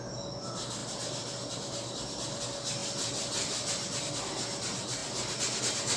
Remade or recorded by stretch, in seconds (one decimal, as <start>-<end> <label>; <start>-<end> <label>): 0.0-0.8 recorded; 0.8-2.4 remade; 2.4-2.8 recorded; 2.8-4.1 remade; 4.1-6.0 recorded